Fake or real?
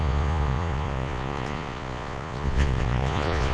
fake